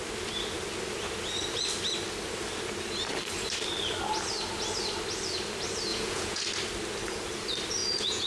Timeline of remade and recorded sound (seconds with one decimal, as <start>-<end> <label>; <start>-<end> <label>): 0.0-5.9 recorded; 5.9-6.4 remade; 6.4-7.8 recorded; 7.8-8.3 remade